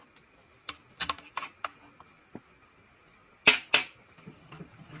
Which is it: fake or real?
real